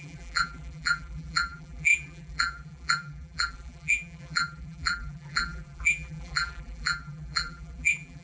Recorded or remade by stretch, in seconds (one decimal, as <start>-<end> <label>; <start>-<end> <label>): 0.0-8.2 remade